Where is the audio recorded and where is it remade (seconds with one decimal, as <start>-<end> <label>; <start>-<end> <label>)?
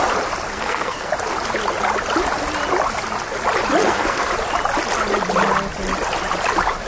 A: 0.0-0.5 recorded; 0.5-1.1 remade; 1.1-3.8 recorded; 3.8-4.3 remade; 4.3-6.9 recorded